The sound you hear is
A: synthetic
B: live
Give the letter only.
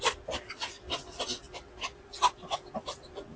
B